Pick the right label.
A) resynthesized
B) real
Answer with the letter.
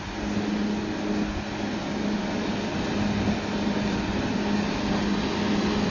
B